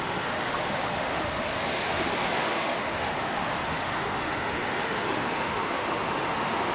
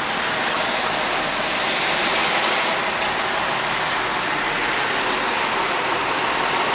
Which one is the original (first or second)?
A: second